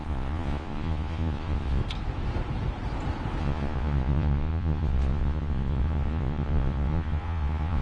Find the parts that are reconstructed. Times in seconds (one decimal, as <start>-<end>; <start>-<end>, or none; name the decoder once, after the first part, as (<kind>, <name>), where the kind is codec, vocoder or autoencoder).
0.0-1.8 (vocoder, Vocos); 3.4-7.8